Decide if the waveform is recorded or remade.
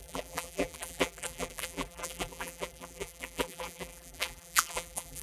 remade